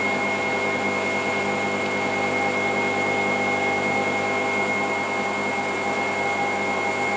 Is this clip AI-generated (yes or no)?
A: no